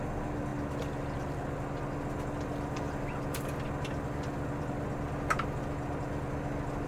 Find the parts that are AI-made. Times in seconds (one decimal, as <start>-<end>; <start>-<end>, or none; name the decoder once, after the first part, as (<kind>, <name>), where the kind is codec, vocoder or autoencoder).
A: none